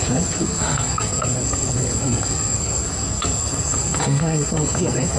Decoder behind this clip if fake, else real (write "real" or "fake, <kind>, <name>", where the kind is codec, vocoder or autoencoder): fake, codec, SNAC